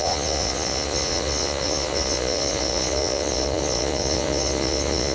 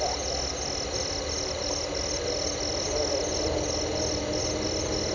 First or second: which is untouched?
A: second